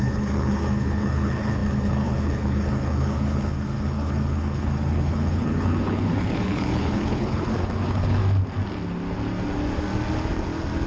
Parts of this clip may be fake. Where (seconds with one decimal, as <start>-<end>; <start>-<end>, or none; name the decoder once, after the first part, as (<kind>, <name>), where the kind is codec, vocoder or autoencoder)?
0.0-8.2 (codec, HILCodec)